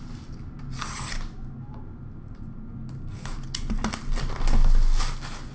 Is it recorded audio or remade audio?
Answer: recorded